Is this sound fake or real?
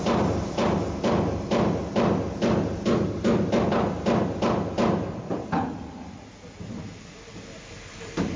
real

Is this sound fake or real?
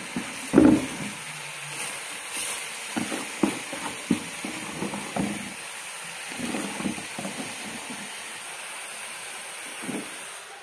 real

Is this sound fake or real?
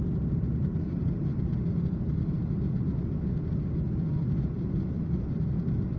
real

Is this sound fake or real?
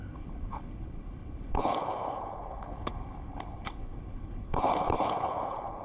fake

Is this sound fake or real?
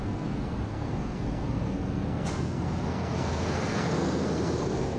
fake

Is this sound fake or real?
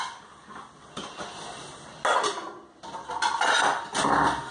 real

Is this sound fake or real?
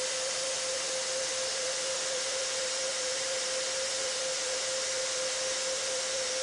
fake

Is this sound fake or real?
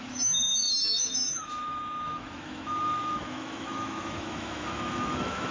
fake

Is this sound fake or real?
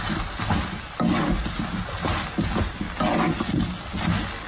real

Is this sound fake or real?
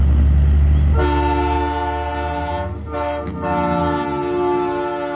real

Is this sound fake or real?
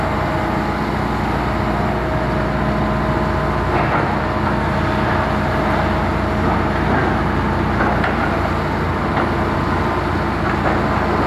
real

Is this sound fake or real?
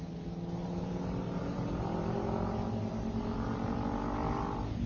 real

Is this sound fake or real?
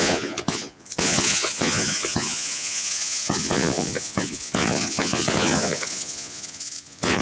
fake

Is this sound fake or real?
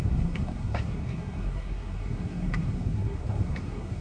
fake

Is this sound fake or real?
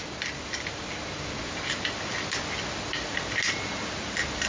real